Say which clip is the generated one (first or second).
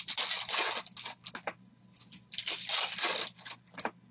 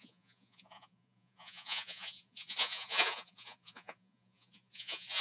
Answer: second